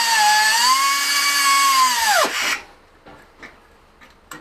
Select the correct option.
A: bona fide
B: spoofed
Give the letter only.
A